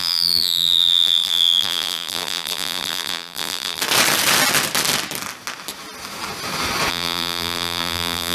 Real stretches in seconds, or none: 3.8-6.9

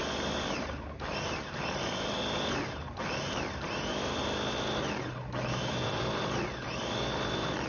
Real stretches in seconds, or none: 0.0-1.1; 4.2-5.7

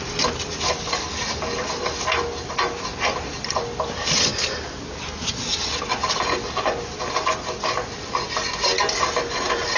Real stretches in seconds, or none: 0.0-9.8